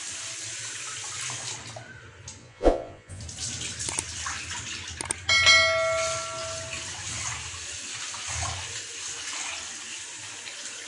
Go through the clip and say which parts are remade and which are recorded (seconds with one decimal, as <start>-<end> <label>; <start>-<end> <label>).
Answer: 0.0-2.4 recorded; 2.4-3.2 remade; 3.2-10.9 recorded